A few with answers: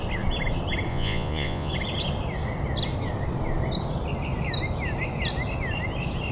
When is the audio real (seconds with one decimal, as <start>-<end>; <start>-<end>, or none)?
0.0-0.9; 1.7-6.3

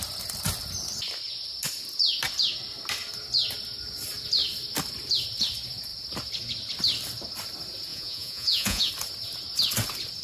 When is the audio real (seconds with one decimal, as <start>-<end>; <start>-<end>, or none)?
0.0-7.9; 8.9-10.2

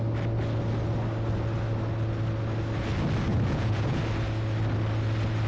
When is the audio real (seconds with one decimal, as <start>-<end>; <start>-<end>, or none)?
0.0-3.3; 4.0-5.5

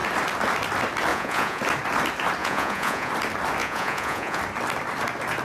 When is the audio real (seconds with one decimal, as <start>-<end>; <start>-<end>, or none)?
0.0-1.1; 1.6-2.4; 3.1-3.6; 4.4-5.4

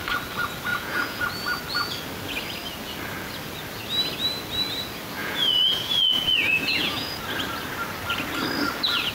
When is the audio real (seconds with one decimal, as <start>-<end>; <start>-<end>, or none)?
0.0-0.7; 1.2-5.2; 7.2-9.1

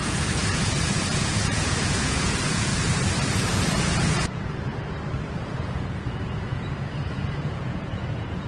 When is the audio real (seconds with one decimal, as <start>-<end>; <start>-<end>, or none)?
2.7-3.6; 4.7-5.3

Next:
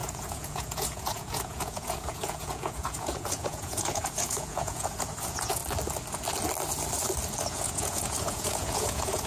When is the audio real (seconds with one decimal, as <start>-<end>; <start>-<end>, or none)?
5.6-7.5

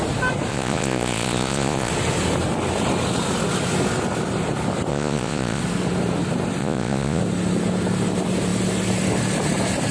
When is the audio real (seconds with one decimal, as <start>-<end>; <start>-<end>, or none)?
0.0-0.5; 1.9-4.9; 5.6-6.6; 7.2-9.9